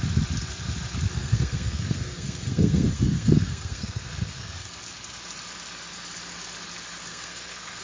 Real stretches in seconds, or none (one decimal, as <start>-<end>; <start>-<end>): 0.0-1.1; 4.7-7.1